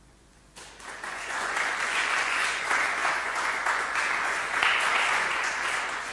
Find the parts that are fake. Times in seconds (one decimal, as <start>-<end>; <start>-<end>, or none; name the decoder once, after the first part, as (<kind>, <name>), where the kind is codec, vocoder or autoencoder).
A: 0.0-6.1 (vocoder, Vocos)